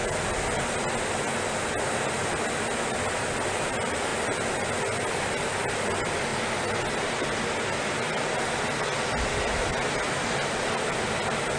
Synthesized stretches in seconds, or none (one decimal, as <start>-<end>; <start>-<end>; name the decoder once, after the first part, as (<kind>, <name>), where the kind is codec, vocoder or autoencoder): none